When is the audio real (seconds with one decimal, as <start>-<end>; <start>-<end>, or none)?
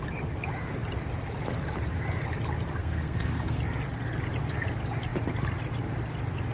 0.0-2.8; 3.6-6.5